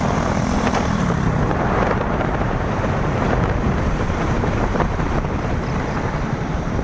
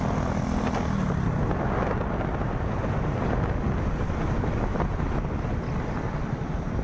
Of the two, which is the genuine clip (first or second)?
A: second